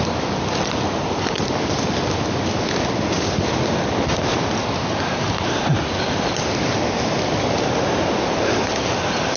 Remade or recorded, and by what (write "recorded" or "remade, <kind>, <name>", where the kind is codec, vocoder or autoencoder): recorded